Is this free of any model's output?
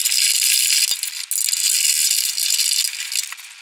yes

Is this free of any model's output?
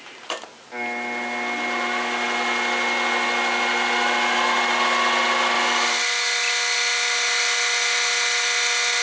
yes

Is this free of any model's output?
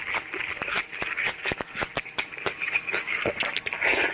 yes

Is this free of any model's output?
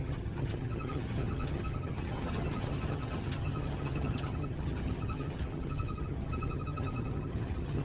no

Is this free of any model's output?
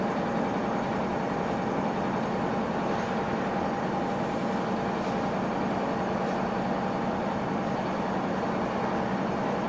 yes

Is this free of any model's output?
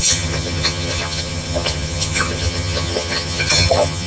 no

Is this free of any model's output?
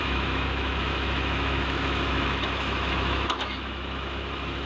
no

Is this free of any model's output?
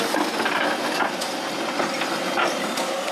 yes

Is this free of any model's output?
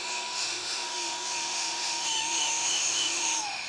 no